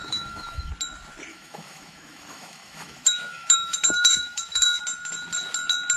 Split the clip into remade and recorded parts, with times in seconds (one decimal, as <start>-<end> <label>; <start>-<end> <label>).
0.0-0.7 remade; 0.7-1.3 recorded; 1.3-4.8 remade; 4.8-6.0 recorded